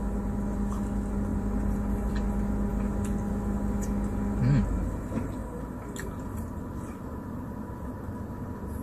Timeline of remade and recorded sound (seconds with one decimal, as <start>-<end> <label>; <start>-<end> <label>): 0.0-1.3 recorded; 1.3-2.1 remade; 2.1-8.8 recorded